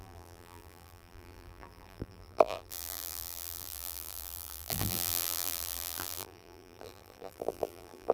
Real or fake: fake